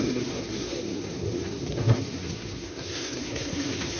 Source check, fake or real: fake